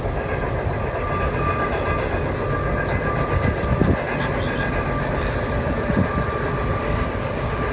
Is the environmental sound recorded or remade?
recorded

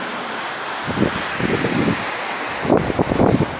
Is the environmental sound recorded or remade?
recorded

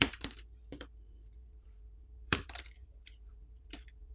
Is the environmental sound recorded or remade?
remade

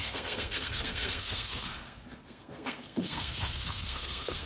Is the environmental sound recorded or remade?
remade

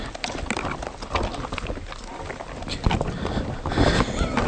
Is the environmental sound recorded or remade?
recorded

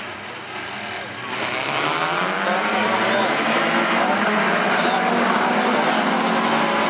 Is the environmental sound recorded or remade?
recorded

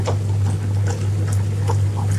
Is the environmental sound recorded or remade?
recorded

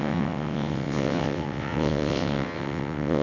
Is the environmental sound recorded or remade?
remade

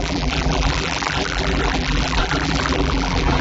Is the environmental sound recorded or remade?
remade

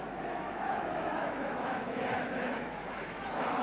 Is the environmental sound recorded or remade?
remade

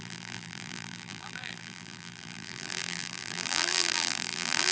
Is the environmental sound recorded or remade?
remade